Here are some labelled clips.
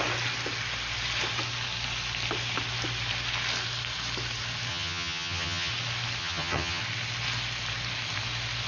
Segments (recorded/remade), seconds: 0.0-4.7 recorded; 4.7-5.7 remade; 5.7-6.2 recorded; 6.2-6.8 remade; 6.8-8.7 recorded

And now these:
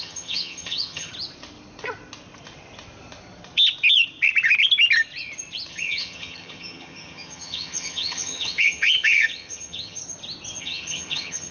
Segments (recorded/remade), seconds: 0.0-1.1 remade; 1.1-5.7 recorded; 5.7-10.0 remade; 10.0-10.6 recorded; 10.6-11.5 remade

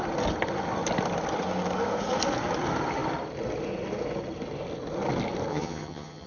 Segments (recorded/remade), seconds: 0.0-5.5 recorded; 5.5-6.3 remade

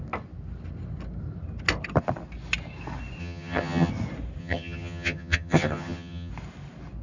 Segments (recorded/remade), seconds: 0.0-3.2 recorded; 3.2-3.9 remade; 3.9-4.4 recorded; 4.4-6.3 remade; 6.3-7.0 recorded

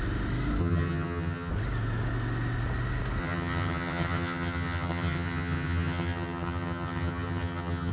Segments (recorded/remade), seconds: 0.0-0.6 recorded; 0.6-1.5 remade; 1.5-3.2 recorded; 3.2-7.9 remade

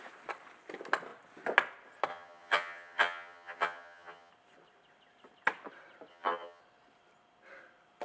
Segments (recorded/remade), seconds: 0.0-2.1 recorded; 2.1-4.3 remade; 4.3-6.1 recorded; 6.1-6.6 remade; 6.6-8.0 recorded

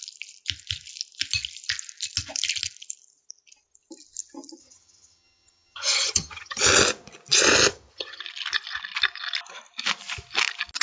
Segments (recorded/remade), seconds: 0.0-4.6 recorded; 4.6-6.6 remade; 6.6-7.7 recorded; 7.7-8.2 remade; 8.2-10.8 recorded

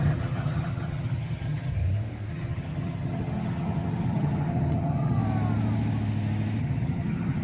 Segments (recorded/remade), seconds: 0.0-1.7 remade; 1.7-2.3 recorded; 2.3-5.2 remade; 5.2-6.6 recorded; 6.6-7.4 remade